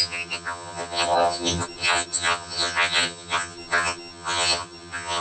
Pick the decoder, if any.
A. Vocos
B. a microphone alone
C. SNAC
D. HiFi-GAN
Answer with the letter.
D